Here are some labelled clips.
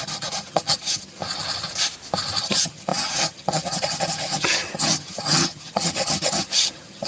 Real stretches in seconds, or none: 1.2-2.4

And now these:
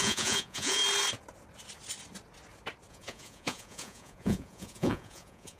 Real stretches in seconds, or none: 0.8-2.9

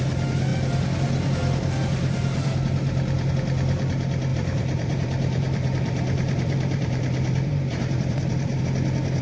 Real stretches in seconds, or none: 0.0-4.3; 8.6-9.2

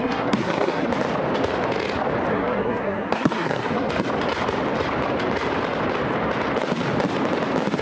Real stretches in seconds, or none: 0.9-2.3; 3.9-7.8

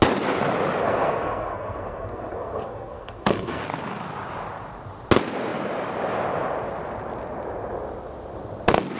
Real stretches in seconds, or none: 0.0-0.8; 3.6-9.0

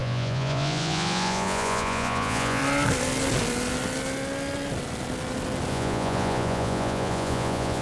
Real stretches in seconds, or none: 2.6-5.7

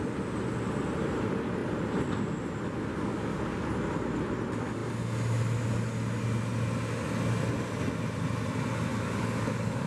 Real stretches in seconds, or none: 0.0-2.9; 3.7-8.9